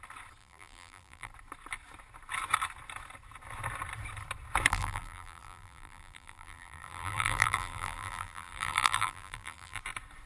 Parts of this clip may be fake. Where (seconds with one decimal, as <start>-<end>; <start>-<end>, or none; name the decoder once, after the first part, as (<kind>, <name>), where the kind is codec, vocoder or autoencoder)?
0.4-1.3 (vocoder, BigVGAN v2); 4.7-9.8